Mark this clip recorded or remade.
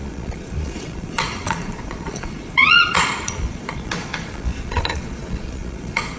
remade